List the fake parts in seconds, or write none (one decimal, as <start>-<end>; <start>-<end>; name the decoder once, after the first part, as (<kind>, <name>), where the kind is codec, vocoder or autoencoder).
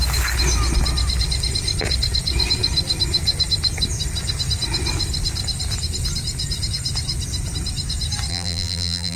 8.3-9.2 (vocoder, BigVGAN v2)